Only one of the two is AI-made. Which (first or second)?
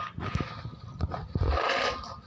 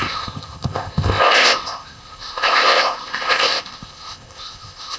second